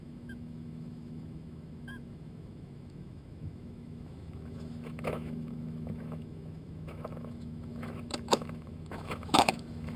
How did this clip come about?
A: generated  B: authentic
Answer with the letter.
A